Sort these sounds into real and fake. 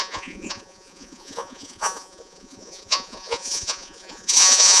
fake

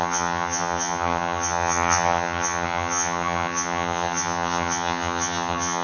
fake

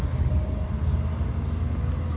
real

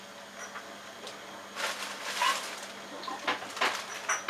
real